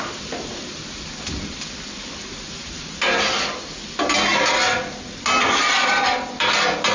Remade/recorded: recorded